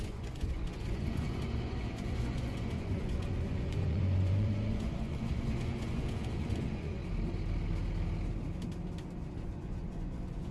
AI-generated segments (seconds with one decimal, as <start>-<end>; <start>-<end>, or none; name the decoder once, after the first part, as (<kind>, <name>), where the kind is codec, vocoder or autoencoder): 0.0-7.0 (vocoder, Vocos); 9.3-10.5